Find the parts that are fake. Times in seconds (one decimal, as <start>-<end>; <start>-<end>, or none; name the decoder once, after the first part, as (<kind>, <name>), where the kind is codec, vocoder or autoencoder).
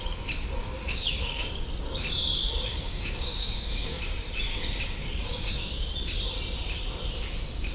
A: 0.8-1.5 (codec, DAC); 2.4-4.0; 4.5-5.9